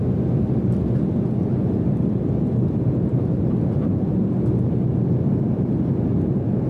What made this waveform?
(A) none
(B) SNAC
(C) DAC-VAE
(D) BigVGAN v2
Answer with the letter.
A